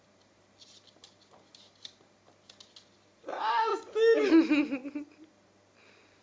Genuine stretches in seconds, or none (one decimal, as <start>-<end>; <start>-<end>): 0.0-3.7; 4.3-6.2